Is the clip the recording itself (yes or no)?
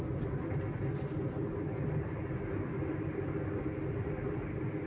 yes